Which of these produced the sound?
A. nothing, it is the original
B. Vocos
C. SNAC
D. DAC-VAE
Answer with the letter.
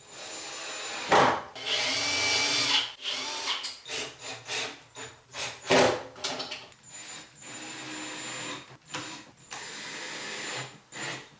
A